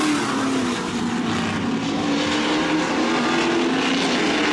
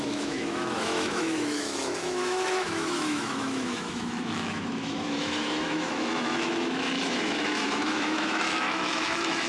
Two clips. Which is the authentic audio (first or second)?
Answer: first